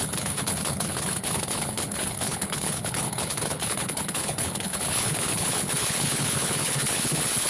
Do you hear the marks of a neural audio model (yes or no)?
yes